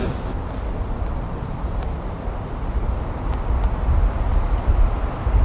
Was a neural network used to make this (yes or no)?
no